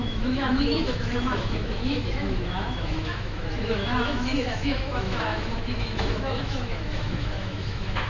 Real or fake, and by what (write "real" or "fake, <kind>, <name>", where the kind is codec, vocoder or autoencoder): fake, autoencoder, DAC-VAE